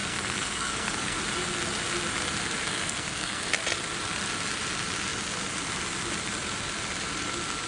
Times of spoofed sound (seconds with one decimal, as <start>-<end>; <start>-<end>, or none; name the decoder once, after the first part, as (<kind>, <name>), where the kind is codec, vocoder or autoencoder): 0.0-1.2 (codec, SNAC); 2.6-3.5